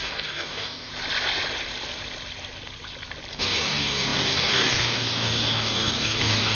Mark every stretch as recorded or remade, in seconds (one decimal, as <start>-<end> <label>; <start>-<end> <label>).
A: 0.0-0.9 remade; 0.9-3.3 recorded; 3.3-6.5 remade